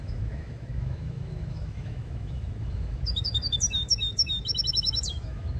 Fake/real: fake